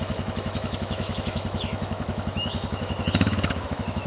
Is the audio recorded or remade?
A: remade